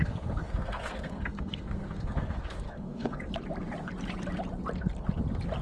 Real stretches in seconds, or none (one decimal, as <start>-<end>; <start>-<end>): 3.3-5.6